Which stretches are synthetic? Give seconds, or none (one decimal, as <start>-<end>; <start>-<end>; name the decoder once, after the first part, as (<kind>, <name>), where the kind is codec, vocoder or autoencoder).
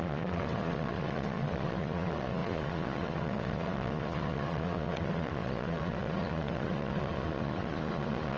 0.0-8.4 (vocoder, Vocos)